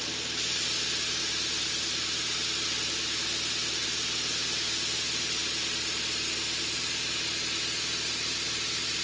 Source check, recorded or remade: recorded